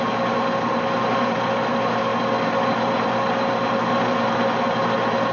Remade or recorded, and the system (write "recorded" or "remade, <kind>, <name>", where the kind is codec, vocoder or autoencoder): recorded